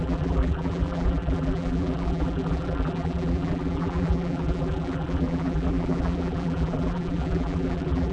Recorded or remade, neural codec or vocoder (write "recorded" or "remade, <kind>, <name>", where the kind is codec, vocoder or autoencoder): remade, vocoder, BigVGAN v2